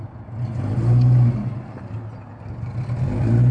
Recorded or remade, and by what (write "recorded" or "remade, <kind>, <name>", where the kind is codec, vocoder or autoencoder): recorded